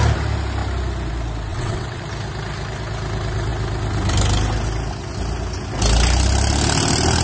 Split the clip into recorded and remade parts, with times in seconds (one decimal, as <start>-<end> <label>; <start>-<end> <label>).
0.0-1.5 recorded; 1.5-2.0 remade; 2.0-7.2 recorded